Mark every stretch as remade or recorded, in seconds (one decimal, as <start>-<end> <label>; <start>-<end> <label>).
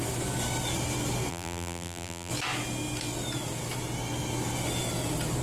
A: 0.0-1.3 recorded; 1.3-2.3 remade; 2.3-5.4 recorded